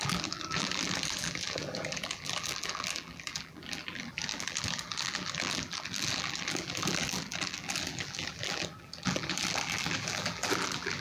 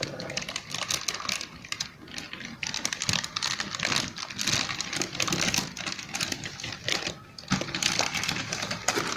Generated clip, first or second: first